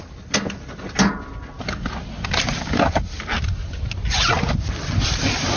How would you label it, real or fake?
real